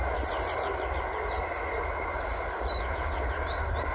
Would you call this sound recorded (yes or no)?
yes